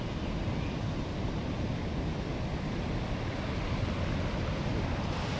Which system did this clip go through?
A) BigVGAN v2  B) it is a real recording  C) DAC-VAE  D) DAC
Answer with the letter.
B